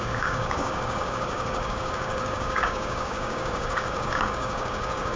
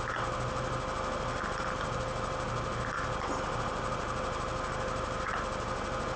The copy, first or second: first